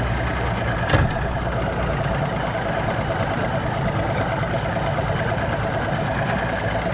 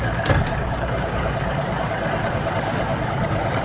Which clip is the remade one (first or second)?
second